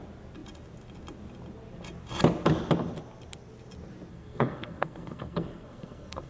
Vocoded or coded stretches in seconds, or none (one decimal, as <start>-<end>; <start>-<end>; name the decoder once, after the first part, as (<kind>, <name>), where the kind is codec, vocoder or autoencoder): 4.1-6.3 (codec, SNAC)